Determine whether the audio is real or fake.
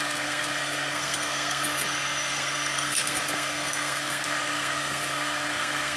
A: fake